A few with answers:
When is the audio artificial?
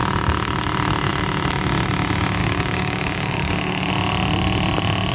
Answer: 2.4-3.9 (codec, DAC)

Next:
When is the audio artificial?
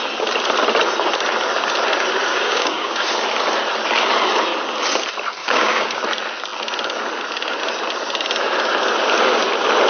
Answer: 2.3-3.0 (codec, DAC); 5.4-6.0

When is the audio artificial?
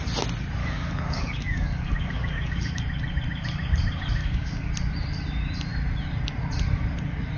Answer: 0.6-2.7 (codec, DAC); 4.2-4.7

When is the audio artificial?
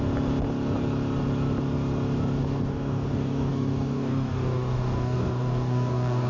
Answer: 2.4-6.3 (codec, DAC)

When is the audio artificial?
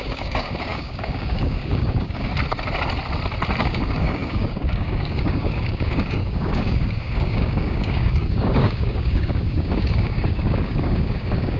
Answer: 0.0-2.3 (codec, DAC); 3.6-11.6